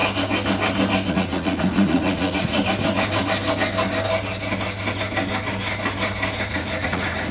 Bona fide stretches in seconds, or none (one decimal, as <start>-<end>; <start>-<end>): 0.0-1.1; 2.6-6.5

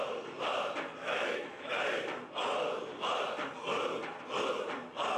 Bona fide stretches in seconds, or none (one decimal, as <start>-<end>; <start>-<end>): 0.0-1.0; 1.7-5.2

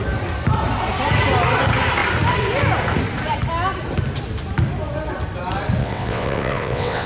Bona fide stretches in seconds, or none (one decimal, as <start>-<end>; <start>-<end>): 0.0-5.8

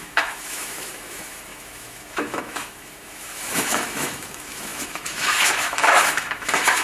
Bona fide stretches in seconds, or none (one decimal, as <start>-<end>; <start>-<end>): none

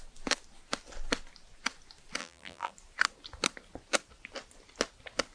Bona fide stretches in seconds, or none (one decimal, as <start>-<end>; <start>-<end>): 0.0-2.2; 2.7-5.3

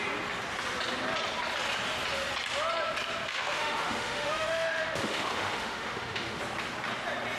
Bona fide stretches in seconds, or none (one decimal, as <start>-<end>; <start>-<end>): 0.0-3.3; 6.4-7.4